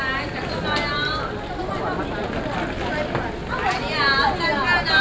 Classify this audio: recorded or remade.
recorded